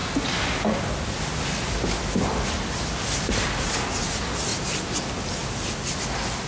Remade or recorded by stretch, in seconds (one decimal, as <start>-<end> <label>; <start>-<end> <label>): 0.0-6.5 recorded